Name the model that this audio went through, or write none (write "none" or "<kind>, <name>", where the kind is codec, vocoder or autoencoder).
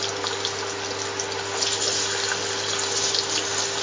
none